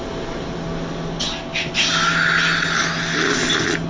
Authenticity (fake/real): real